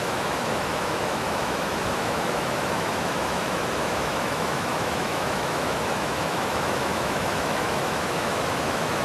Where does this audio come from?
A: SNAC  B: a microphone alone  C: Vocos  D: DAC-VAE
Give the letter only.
D